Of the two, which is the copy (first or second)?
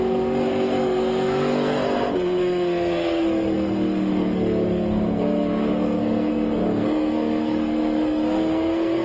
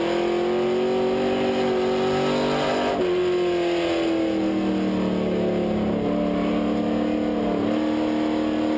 first